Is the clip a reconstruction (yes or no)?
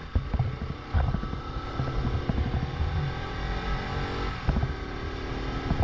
no